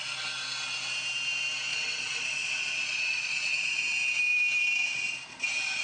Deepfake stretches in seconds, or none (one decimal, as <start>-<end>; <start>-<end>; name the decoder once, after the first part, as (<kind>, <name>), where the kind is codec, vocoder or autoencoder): 1.7-3.8 (vocoder, Vocos)